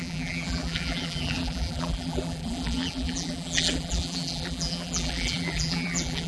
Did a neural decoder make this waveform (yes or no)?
yes